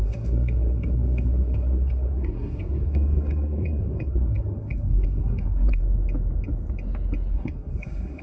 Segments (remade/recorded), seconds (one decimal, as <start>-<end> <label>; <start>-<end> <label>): 0.0-5.8 remade; 5.8-7.3 recorded; 7.3-8.2 remade